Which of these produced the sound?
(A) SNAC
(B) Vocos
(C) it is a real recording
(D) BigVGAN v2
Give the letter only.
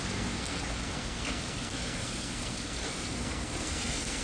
A